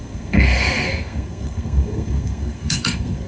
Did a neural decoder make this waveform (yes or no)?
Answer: yes